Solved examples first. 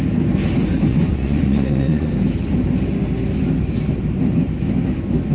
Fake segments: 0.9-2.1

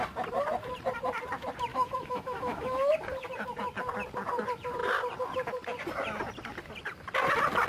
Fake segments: 1.7-2.9

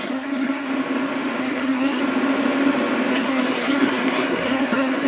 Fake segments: 0.0-0.7; 1.4-2.0; 3.1-5.1

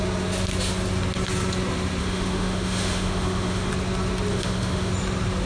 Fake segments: 2.0-3.7; 4.3-4.9

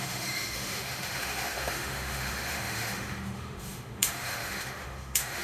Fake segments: 0.0-5.4

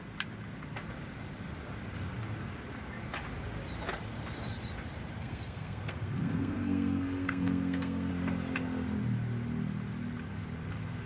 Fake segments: 5.2-8.1

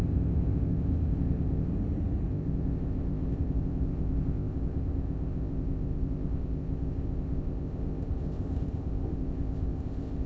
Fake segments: 0.0-1.7; 2.3-10.3